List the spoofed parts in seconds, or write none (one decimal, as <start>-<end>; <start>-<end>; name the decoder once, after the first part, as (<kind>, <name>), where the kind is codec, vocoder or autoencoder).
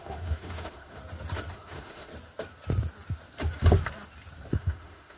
0.0-1.0 (autoencoder, DAC-VAE); 1.5-2.1; 4.5-5.2